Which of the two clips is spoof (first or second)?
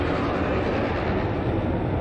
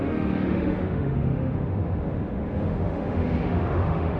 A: second